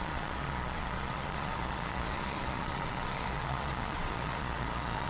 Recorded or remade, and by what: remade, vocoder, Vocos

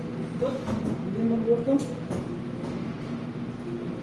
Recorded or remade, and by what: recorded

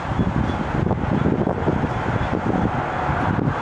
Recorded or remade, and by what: recorded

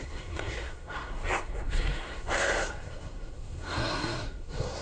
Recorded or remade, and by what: remade, codec, SNAC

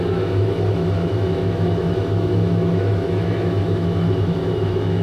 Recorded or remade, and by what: remade, autoencoder, DAC-VAE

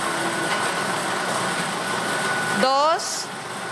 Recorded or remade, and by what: recorded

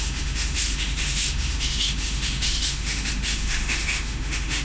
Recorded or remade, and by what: remade, autoencoder, DAC-VAE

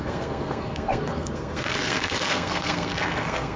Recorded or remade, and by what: remade, codec, SNAC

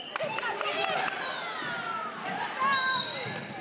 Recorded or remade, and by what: recorded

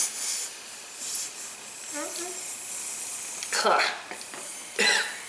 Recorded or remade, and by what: recorded